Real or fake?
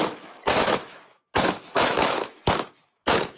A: fake